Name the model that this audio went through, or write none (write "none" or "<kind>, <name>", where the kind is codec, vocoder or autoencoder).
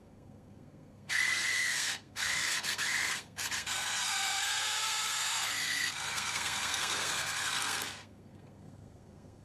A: codec, SNAC